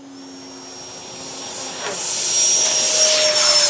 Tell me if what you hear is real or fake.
real